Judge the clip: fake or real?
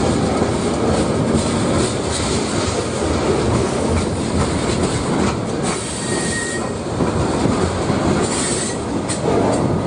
real